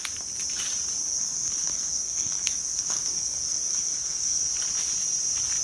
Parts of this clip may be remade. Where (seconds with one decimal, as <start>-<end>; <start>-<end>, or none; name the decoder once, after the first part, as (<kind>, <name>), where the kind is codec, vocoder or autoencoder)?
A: 1.0-4.4 (codec, SNAC)